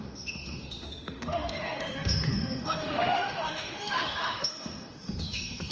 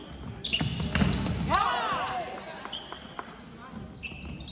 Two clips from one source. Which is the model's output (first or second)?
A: first